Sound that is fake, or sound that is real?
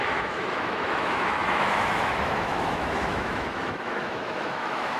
fake